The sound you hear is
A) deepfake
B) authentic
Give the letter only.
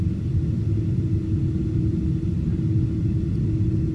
B